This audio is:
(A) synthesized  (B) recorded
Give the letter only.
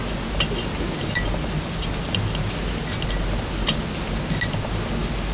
B